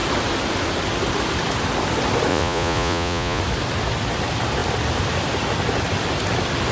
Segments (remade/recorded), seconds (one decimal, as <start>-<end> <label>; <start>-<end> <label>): 0.0-2.3 recorded; 2.3-3.4 remade; 3.4-6.7 recorded